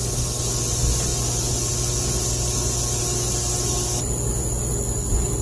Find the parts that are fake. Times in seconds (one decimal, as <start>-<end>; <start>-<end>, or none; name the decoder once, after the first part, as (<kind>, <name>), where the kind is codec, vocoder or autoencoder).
none